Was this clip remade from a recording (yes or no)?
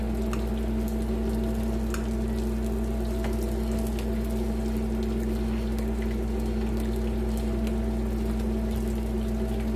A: no